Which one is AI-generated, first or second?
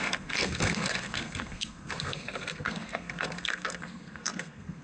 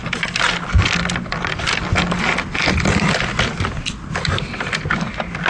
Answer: first